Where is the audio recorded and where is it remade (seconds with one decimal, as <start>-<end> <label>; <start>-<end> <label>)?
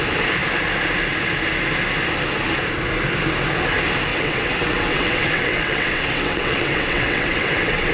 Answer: 0.0-4.1 recorded; 4.1-7.9 remade